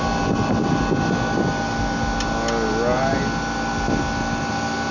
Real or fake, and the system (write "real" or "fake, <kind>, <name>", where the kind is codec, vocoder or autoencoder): real